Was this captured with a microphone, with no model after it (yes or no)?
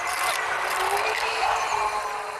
yes